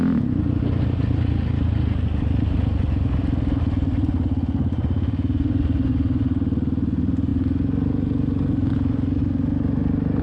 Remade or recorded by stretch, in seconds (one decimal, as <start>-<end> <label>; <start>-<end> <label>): 0.0-10.2 recorded